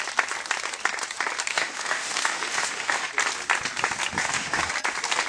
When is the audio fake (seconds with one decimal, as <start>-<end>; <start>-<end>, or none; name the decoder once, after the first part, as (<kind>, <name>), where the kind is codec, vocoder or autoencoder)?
1.5-3.1 (autoencoder, DAC-VAE); 4.2-4.7